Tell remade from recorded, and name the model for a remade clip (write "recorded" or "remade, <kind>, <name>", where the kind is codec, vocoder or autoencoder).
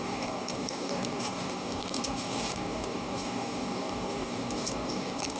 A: remade, codec, DAC